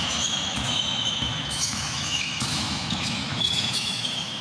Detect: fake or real fake